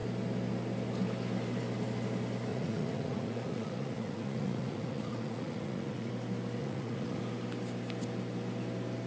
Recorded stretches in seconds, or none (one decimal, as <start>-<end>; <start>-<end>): 0.0-2.5; 6.1-6.6; 7.2-9.1